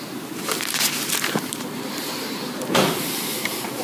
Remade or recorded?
remade